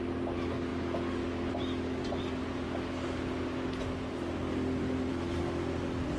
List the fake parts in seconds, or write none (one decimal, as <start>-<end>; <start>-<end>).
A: none